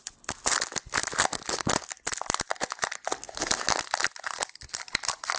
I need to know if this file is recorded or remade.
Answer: recorded